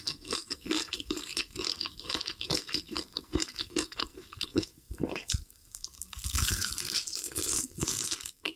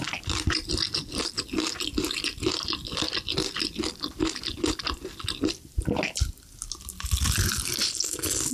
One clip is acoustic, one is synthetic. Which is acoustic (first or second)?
second